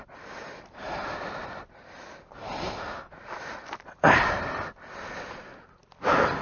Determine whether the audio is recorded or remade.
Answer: recorded